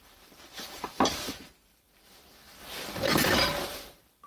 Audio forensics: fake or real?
fake